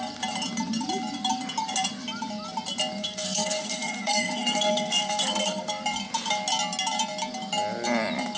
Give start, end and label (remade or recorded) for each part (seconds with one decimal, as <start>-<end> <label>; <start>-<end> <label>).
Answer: 0.0-3.0 recorded; 3.0-5.7 remade; 5.7-8.4 recorded